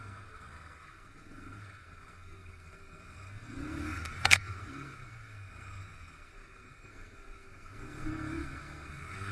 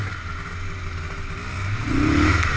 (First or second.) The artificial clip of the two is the first